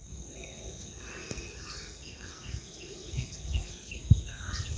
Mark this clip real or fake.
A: fake